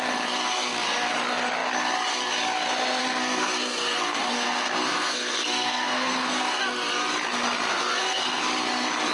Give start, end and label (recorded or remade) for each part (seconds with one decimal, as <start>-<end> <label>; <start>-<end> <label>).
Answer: 0.0-3.0 recorded; 3.0-6.6 remade; 6.6-7.7 recorded; 7.7-8.4 remade; 8.4-9.1 recorded